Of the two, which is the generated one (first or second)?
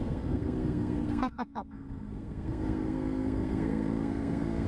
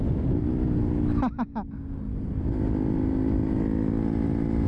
first